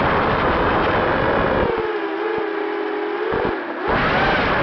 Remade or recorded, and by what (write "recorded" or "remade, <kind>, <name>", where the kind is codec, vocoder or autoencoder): recorded